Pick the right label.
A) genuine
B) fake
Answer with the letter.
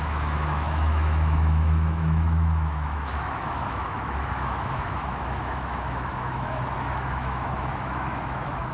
B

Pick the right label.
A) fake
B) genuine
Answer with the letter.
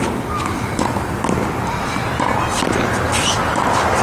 B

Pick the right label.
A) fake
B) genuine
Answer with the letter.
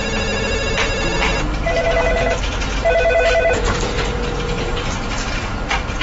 B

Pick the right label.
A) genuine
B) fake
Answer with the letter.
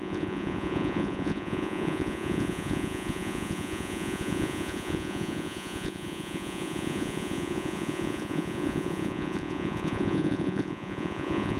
B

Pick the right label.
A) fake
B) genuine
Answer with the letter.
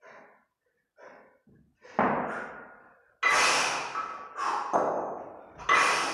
B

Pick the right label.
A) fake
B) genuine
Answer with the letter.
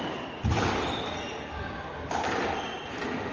B